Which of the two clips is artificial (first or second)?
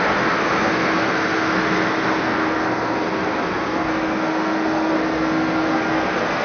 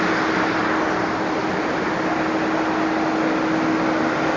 first